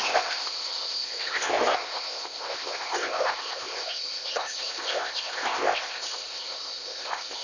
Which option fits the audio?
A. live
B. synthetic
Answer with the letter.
B